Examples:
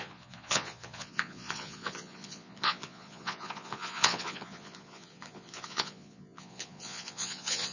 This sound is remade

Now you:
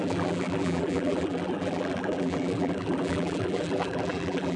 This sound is remade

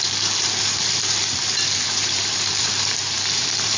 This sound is remade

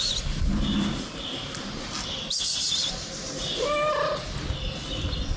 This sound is recorded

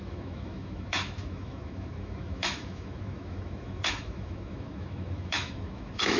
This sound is remade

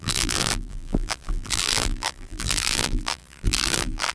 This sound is remade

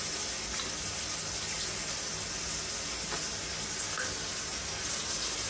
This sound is recorded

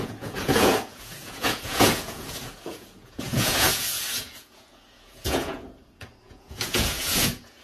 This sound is remade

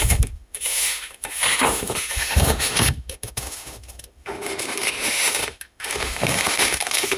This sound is remade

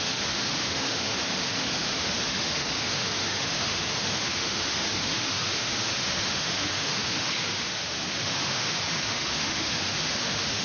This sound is remade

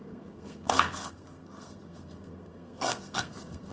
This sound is remade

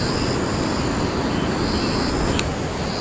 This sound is recorded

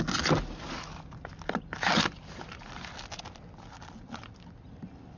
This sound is recorded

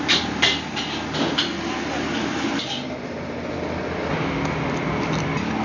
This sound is recorded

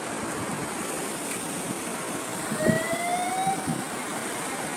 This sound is recorded